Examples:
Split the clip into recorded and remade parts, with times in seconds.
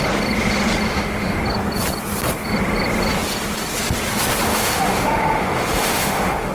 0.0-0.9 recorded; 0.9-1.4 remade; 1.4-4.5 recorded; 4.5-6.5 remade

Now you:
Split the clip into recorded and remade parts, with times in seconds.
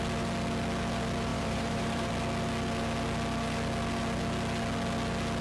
0.0-1.3 recorded; 1.3-2.1 remade; 2.1-5.4 recorded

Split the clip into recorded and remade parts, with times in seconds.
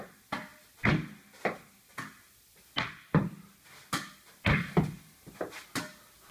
0.0-6.3 recorded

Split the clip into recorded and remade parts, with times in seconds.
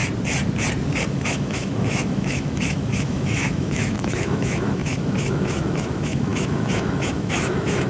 0.0-1.1 recorded; 1.1-7.9 remade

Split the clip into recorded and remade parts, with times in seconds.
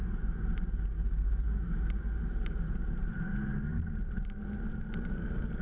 0.0-5.6 remade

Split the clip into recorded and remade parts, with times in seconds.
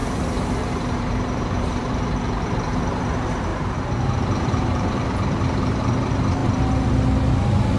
0.0-2.8 remade; 2.8-3.5 recorded; 3.5-5.9 remade; 5.9-7.8 recorded